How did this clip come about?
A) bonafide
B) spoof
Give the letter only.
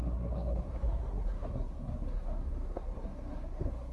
B